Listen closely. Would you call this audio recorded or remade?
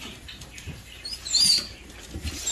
remade